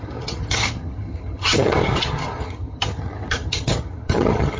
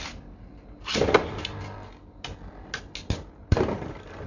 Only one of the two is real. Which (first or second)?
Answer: second